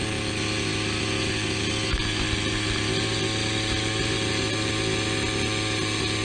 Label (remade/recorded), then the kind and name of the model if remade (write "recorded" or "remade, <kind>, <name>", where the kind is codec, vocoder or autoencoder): recorded